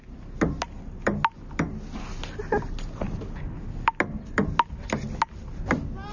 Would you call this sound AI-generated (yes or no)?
no